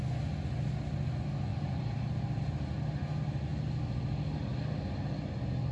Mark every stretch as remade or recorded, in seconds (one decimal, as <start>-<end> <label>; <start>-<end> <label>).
0.0-1.5 recorded; 1.5-2.4 remade; 2.4-5.7 recorded